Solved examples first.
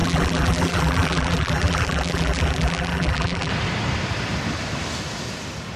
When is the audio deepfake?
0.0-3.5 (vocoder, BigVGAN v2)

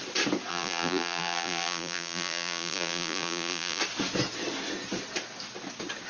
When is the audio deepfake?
0.5-3.8 (vocoder, BigVGAN v2)

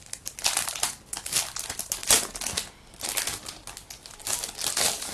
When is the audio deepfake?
none